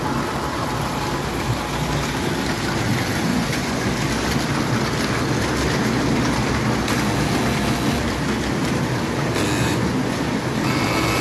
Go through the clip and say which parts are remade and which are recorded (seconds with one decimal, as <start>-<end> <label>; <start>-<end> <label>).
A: 0.0-3.3 recorded; 3.3-3.9 remade; 3.9-9.6 recorded; 9.6-10.4 remade; 10.4-11.2 recorded